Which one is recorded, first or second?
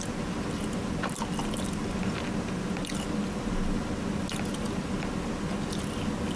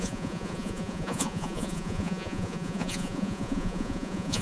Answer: first